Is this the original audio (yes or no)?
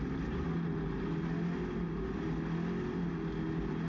yes